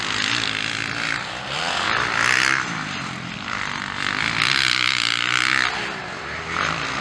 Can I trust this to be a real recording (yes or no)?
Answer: yes